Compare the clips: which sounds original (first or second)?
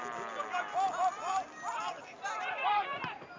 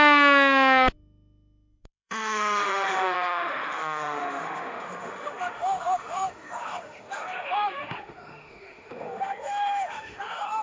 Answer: first